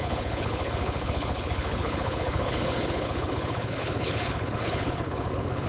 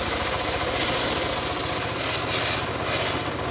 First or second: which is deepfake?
first